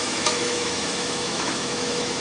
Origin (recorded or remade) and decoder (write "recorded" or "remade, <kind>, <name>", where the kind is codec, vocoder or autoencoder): remade, autoencoder, DAC-VAE